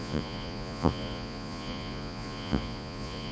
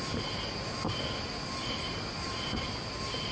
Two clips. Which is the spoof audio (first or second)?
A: first